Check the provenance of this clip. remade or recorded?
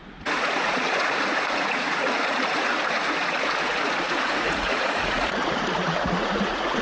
remade